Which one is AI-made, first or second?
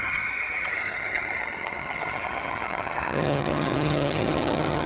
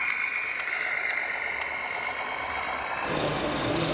first